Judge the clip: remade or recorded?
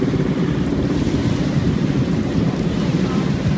remade